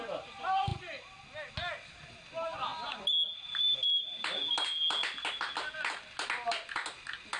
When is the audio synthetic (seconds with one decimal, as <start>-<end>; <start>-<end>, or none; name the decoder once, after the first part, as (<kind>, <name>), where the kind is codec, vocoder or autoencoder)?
none